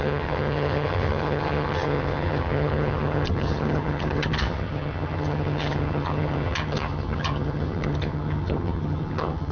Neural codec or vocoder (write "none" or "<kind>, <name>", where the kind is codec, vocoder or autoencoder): vocoder, HiFi-GAN